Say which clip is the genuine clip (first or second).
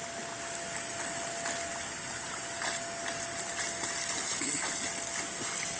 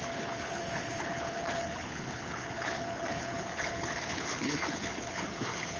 first